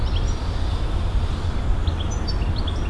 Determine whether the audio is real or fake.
real